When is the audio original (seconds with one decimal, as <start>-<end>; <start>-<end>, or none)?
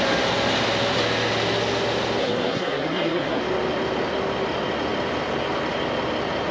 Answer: 0.0-2.2; 3.4-6.5